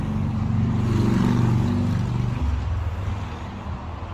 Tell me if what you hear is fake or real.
real